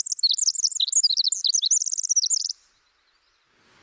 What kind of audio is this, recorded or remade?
recorded